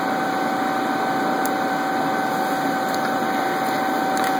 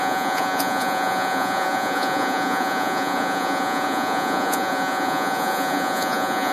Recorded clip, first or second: first